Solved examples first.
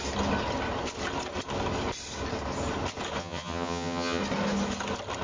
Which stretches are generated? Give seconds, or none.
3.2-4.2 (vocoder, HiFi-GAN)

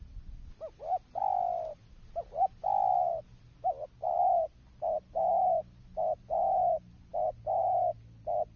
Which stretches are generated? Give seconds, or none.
none

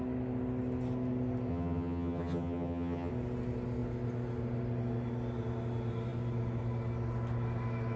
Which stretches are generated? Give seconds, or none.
1.5-3.1 (vocoder, HiFi-GAN)